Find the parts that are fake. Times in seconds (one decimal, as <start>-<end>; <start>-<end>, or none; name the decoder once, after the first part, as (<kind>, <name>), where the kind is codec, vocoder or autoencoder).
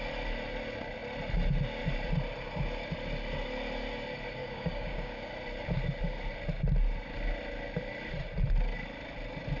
4.4-5.3 (codec, DAC)